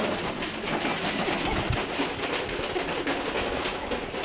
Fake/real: real